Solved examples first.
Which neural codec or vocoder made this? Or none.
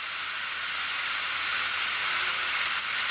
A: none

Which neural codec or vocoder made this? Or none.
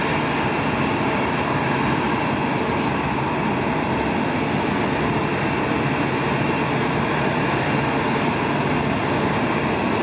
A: none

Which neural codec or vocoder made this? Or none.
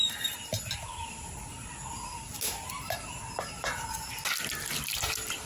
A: none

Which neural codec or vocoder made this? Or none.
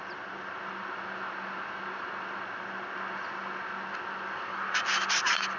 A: none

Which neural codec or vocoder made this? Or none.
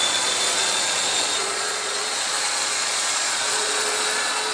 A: vocoder, Vocos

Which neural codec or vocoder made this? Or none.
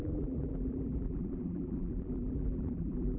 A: vocoder, BigVGAN v2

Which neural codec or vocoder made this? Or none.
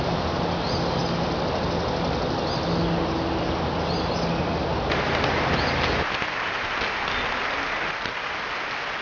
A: none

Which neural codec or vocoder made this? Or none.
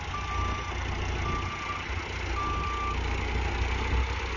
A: none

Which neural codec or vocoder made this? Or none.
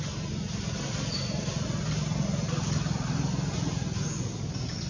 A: none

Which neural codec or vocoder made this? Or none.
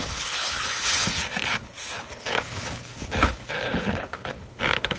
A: codec, HILCodec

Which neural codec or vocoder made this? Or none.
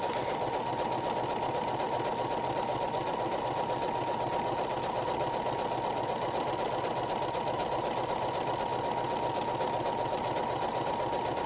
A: none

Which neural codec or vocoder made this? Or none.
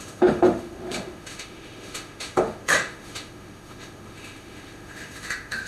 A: autoencoder, DAC-VAE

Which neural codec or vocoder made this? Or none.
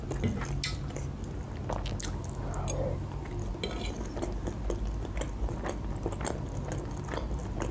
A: none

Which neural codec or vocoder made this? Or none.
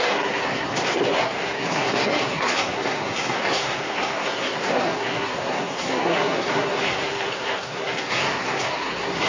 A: codec, SNAC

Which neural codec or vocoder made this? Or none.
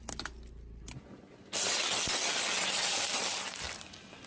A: none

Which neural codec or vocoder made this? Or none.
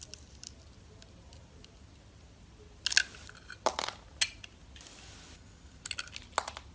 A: none